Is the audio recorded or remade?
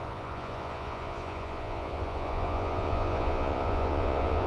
remade